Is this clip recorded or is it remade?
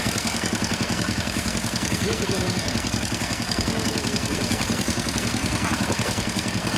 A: remade